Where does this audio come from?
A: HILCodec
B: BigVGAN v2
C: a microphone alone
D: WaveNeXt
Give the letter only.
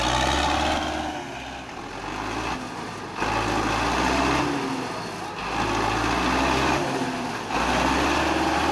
C